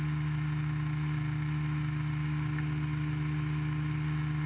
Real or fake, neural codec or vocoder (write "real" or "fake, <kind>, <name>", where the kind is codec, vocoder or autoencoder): real